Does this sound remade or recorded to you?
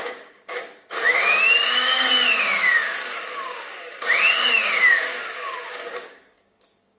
remade